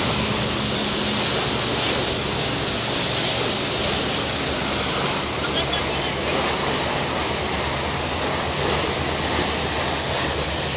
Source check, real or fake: real